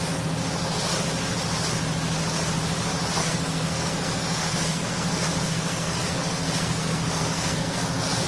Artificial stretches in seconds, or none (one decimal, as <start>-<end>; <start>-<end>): 3.2-8.3